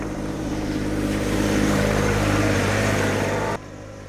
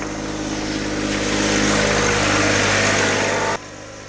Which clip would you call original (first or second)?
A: second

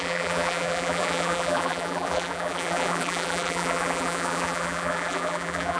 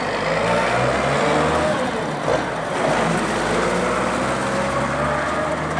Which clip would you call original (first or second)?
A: second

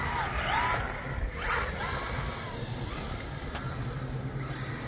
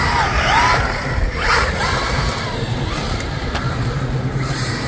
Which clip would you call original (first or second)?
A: first